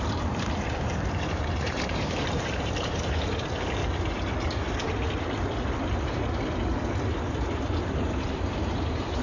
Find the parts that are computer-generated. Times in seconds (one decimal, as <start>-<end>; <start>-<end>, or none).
0.0-3.8; 7.9-9.2